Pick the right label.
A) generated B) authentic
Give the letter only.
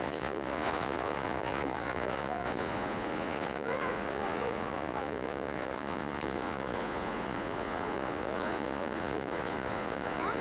A